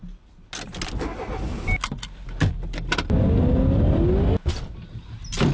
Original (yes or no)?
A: yes